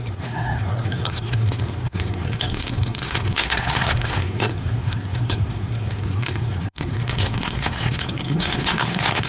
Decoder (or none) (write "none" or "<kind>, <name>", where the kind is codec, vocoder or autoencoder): codec, SNAC